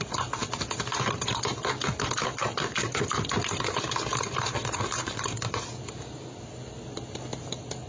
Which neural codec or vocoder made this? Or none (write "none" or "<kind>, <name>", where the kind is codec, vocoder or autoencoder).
none